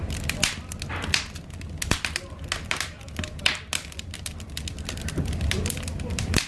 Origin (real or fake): real